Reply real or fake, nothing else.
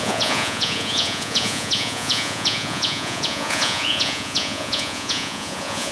fake